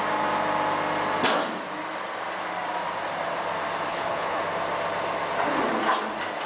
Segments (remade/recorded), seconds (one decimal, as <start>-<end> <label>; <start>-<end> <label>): 0.0-3.9 recorded; 3.9-4.4 remade; 4.4-6.5 recorded